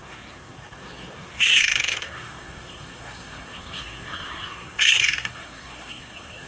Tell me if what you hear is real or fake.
fake